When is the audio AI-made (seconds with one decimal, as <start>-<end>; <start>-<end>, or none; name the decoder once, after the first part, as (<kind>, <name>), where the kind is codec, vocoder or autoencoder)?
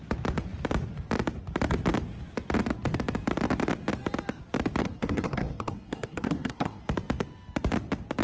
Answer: 4.8-6.8 (codec, SNAC)